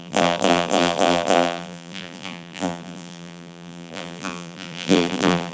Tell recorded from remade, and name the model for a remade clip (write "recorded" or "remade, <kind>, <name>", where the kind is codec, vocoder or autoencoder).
remade, vocoder, BigVGAN v2